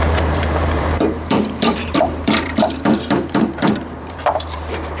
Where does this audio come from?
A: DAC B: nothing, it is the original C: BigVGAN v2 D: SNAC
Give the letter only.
C